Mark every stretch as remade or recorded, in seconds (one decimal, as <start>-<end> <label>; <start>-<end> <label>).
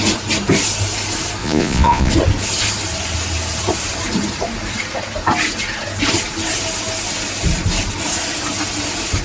0.0-1.4 recorded; 1.4-2.1 remade; 2.1-9.2 recorded